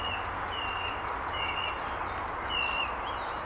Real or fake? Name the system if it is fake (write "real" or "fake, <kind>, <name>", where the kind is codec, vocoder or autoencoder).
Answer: real